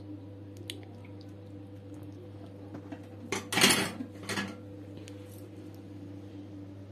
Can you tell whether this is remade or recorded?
recorded